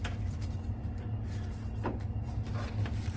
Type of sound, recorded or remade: recorded